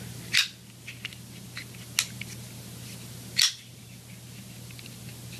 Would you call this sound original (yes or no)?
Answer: yes